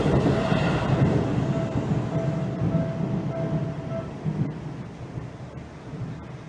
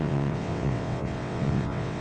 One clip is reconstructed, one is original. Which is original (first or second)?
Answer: first